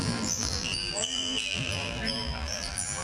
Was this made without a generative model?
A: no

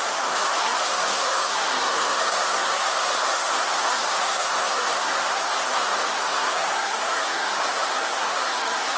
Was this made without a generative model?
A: no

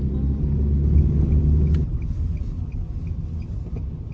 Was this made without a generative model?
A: yes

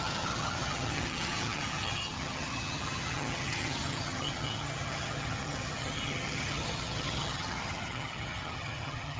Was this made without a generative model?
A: no